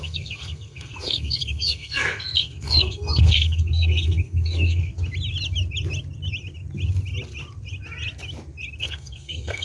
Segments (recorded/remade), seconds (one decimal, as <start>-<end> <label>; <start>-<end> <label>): 0.0-4.9 remade; 4.9-8.8 recorded; 8.8-9.6 remade